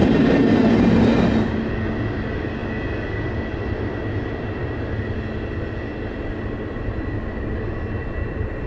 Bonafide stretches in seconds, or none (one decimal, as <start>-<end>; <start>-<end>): 0.0-8.7